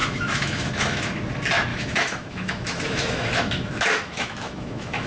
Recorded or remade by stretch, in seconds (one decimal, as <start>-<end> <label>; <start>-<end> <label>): 0.0-1.1 remade; 1.1-1.7 recorded; 1.7-5.1 remade